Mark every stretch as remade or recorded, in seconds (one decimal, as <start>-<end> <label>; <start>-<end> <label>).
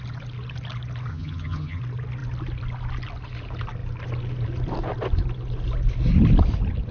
0.0-1.1 recorded; 1.1-1.8 remade; 1.8-6.9 recorded